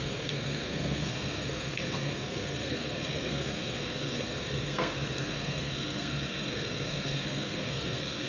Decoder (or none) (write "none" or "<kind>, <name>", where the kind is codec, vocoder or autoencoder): codec, SNAC